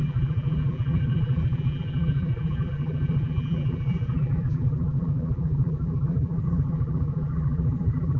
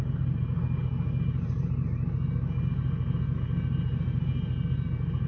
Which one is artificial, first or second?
first